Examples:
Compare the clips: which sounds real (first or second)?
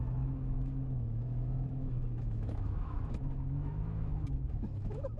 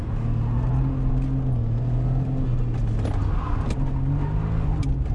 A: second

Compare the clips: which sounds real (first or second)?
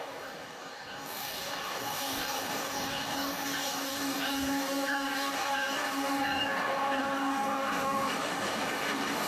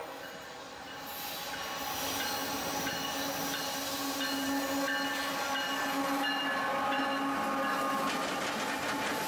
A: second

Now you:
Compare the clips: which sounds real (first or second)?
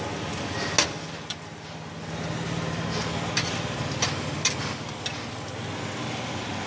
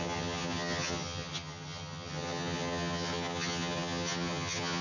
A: first